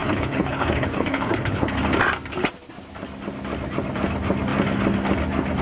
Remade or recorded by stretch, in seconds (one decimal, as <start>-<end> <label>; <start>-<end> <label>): 0.0-1.8 remade; 1.8-5.6 recorded